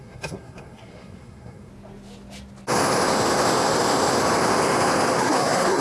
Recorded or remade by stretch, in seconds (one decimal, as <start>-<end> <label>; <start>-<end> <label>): 0.0-1.7 remade; 1.7-5.2 recorded; 5.2-5.8 remade